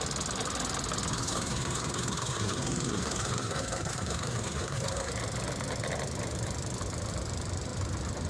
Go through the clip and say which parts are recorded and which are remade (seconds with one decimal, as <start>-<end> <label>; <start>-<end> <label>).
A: 0.0-1.1 recorded; 1.1-5.1 remade; 5.1-8.3 recorded